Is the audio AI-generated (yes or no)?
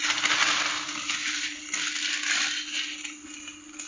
no